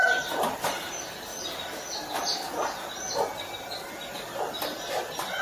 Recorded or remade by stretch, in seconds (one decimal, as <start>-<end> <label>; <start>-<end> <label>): 0.0-1.3 remade; 1.3-4.5 recorded; 4.5-5.4 remade